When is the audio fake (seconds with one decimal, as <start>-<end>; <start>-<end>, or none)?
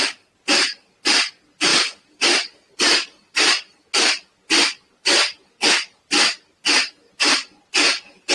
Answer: none